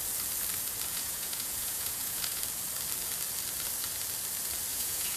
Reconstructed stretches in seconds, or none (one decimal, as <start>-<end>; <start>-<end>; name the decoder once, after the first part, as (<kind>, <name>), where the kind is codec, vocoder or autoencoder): 0.9-2.4 (vocoder, Vocos); 4.7-5.2